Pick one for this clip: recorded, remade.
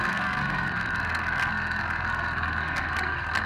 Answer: remade